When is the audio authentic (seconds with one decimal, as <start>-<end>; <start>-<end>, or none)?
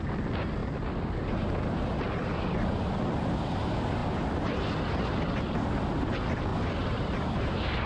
0.0-6.5; 7.5-7.9